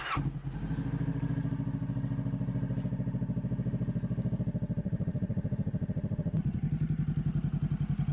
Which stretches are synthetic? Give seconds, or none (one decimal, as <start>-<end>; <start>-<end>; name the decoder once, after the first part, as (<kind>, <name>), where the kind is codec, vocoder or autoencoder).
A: 4.8-6.6 (vocoder, Vocos)